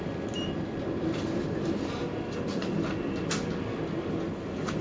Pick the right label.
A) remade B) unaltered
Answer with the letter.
B